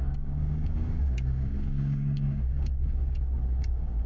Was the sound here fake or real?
fake